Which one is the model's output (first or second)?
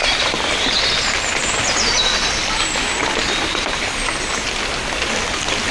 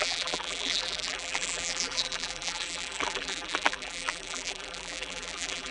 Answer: second